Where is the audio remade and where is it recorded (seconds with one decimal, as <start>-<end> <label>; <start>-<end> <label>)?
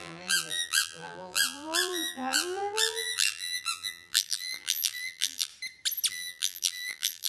0.0-5.5 remade; 5.5-6.1 recorded; 6.1-7.3 remade